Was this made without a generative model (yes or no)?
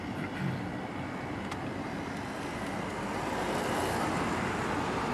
yes